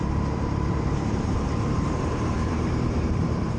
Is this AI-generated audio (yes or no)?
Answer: yes